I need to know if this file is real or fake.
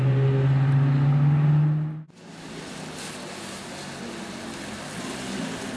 real